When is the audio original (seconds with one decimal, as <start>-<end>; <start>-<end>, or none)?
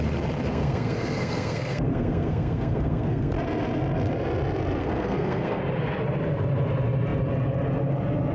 0.0-0.5; 3.3-4.8; 5.6-8.3